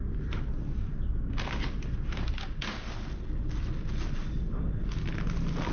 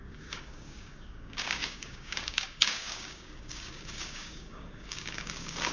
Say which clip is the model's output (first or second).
second